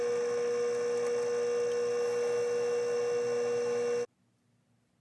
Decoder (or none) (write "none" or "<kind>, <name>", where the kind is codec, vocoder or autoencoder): none